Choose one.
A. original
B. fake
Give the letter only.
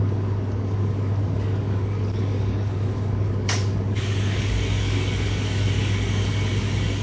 B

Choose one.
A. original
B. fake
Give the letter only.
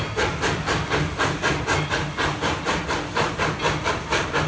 A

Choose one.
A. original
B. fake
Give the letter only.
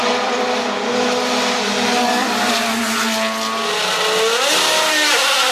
A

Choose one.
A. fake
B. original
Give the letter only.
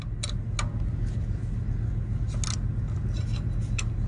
B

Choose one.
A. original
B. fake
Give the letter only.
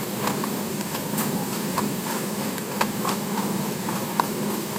B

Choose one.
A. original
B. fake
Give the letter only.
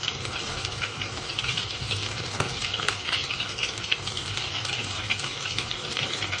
B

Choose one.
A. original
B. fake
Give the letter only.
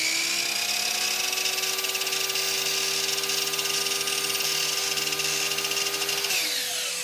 A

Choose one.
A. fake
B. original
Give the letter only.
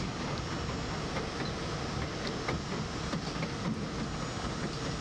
B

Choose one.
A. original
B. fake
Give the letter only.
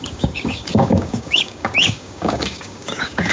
B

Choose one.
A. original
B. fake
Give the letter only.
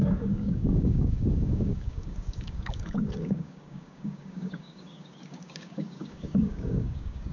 B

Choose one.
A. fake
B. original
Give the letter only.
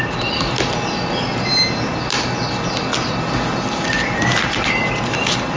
B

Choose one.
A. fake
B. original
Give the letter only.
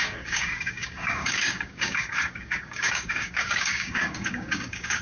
A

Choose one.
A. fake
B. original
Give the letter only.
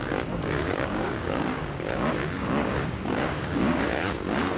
A